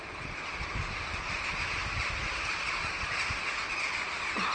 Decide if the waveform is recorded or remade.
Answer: recorded